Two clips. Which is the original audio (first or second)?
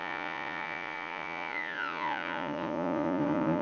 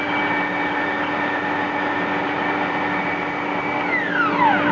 second